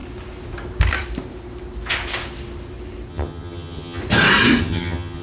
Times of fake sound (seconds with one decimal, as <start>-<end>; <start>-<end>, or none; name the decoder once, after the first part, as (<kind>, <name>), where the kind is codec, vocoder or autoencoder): 3.1-4.0 (vocoder, HiFi-GAN); 4.6-5.2